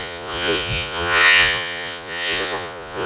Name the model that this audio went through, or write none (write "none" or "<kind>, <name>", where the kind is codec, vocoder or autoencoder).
vocoder, Vocos